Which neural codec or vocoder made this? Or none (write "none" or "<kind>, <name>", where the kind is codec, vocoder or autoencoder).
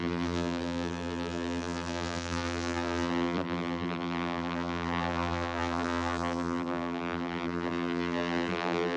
vocoder, BigVGAN v2